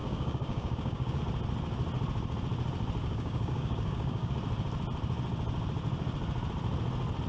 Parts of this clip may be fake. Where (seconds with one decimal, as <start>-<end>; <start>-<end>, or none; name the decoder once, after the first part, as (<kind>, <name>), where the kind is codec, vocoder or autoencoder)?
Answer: 0.0-1.2 (codec, DAC); 3.0-4.3